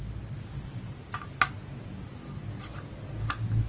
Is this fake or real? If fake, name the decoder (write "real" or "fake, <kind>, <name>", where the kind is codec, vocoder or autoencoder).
real